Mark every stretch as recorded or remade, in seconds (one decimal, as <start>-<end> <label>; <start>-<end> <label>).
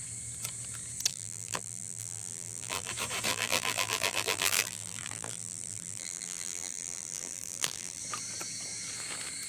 0.0-1.1 recorded; 1.1-2.9 remade; 2.9-3.3 recorded; 3.3-8.0 remade; 8.0-9.5 recorded